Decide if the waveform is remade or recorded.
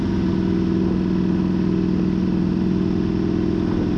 recorded